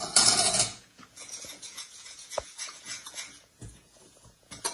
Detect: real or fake fake